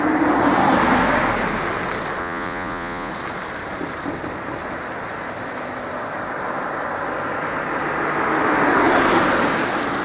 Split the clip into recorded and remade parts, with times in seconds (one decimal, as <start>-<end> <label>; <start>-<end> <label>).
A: 0.0-2.2 recorded; 2.2-3.1 remade; 3.1-10.0 recorded